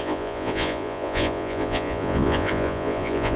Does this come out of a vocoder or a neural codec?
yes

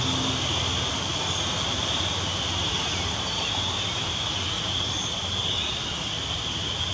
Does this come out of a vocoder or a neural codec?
no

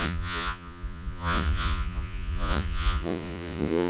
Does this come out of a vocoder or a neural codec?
yes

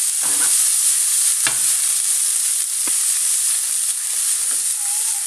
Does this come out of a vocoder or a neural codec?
no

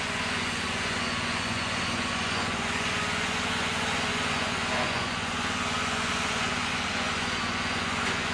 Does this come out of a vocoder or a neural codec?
yes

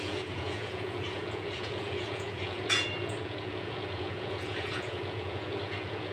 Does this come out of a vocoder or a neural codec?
yes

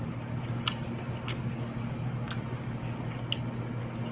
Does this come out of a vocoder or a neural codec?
no